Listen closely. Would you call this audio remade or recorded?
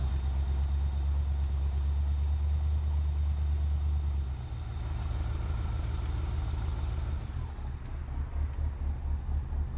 recorded